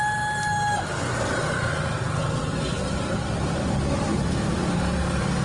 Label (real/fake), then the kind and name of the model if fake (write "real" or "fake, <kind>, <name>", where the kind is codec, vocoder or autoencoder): real